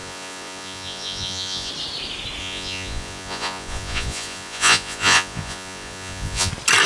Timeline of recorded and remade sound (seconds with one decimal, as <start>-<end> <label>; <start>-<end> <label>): 0.0-1.7 remade; 1.7-2.4 recorded; 2.4-6.5 remade; 6.5-6.9 recorded